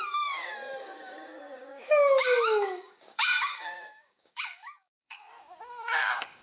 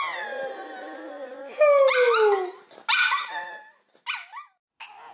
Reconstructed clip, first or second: first